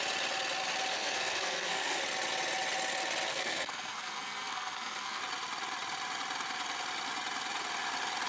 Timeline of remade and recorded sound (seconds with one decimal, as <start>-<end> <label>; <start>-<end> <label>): 0.0-0.9 recorded; 0.9-2.0 remade; 2.0-3.3 recorded; 3.3-5.2 remade; 5.2-8.3 recorded